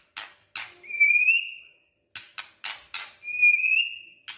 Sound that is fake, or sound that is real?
real